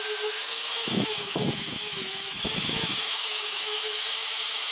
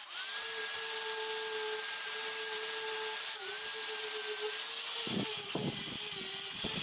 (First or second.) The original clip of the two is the second